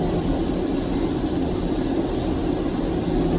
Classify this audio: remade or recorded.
recorded